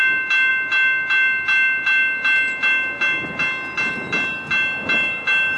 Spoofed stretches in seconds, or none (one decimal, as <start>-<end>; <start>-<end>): none